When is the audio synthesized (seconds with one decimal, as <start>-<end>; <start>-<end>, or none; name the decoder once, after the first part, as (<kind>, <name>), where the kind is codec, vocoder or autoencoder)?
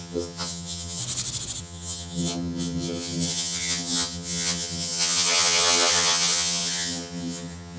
0.0-1.0 (vocoder, HiFi-GAN); 1.6-7.8